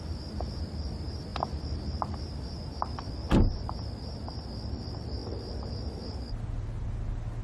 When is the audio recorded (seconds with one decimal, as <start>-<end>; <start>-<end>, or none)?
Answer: 0.0-7.4